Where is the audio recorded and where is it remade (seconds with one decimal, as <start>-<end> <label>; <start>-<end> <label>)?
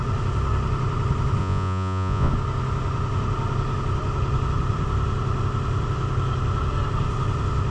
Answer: 0.0-1.4 recorded; 1.4-2.3 remade; 2.3-7.7 recorded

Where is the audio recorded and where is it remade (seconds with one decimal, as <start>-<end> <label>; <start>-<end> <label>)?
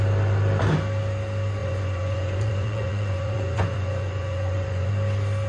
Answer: 0.0-1.6 recorded; 1.6-4.9 remade; 4.9-5.5 recorded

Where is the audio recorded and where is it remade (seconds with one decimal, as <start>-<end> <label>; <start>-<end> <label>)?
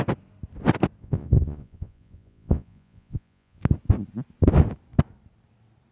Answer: 0.0-1.0 recorded; 1.0-3.6 remade; 3.6-5.9 recorded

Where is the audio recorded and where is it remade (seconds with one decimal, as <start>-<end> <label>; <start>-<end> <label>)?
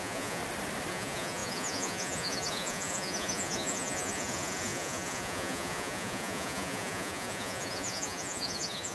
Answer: 0.0-0.4 remade; 0.4-0.9 recorded; 0.9-8.9 remade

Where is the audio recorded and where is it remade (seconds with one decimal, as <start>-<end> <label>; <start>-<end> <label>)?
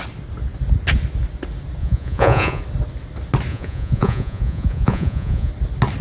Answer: 0.0-1.8 recorded; 1.8-2.6 remade; 2.6-3.5 recorded; 3.5-5.5 remade; 5.5-6.0 recorded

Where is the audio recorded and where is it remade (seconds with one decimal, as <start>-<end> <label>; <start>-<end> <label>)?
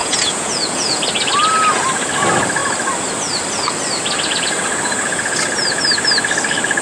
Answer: 0.0-1.0 remade; 1.0-6.8 recorded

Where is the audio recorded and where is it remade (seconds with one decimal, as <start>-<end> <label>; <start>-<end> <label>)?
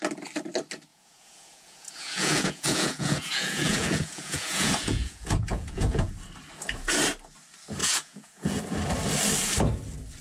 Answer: 0.0-0.9 recorded; 0.9-6.1 remade; 6.1-7.8 recorded; 7.8-8.6 remade; 8.6-10.2 recorded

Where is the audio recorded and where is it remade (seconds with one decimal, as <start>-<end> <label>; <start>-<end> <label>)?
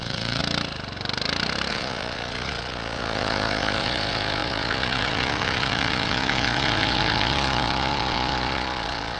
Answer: 0.0-0.4 remade; 0.4-1.7 recorded; 1.7-9.2 remade